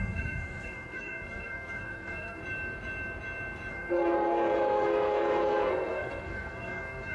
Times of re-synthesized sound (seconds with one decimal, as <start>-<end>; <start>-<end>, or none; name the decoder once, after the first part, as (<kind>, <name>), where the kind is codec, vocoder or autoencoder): 0.0-2.4 (codec, SNAC); 3.7-7.1